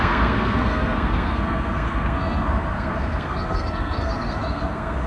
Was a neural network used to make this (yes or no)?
yes